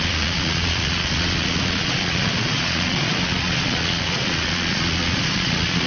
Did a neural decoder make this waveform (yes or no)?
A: yes